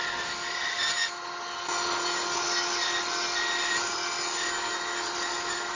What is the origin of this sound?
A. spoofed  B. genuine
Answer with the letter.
B